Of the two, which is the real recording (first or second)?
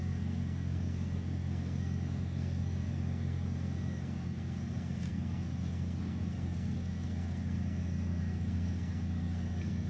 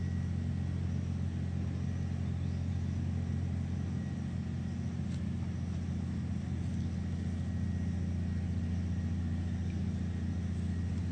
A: second